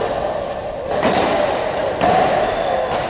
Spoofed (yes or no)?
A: no